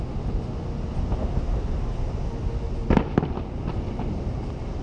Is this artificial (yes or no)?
no